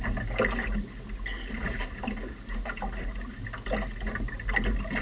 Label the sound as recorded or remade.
recorded